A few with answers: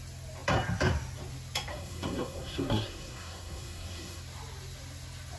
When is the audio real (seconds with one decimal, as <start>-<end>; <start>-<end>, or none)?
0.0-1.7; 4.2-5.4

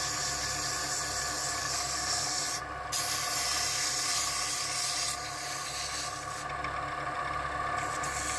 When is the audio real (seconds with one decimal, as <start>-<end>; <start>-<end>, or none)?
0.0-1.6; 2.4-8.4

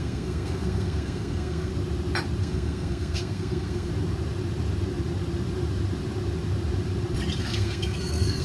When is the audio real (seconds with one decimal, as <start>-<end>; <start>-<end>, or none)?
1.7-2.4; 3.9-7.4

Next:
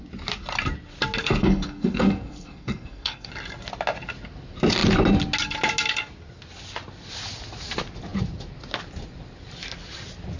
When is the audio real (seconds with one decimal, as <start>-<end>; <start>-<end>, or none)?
0.0-1.2; 3.3-10.4